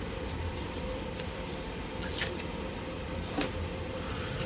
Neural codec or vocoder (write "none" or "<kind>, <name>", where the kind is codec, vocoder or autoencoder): vocoder, BigVGAN v2